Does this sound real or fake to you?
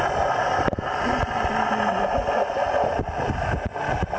real